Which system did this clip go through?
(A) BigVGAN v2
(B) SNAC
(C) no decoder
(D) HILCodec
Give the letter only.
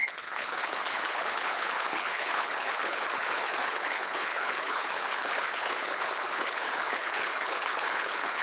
D